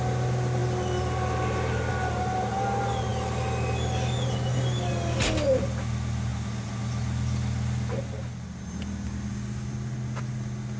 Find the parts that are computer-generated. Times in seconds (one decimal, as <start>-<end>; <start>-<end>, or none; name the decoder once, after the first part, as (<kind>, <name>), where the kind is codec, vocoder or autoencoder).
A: none